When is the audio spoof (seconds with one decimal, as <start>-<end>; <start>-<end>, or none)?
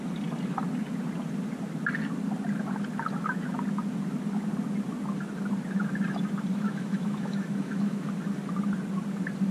6.5-8.1